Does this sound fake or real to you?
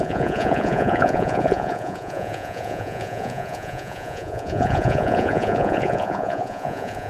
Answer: fake